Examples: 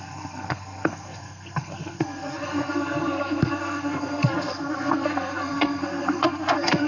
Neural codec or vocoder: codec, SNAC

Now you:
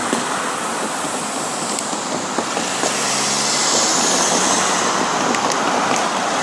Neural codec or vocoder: none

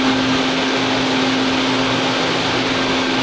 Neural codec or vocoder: none